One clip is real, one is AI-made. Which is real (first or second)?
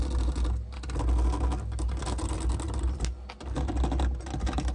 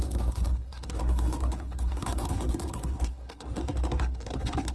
first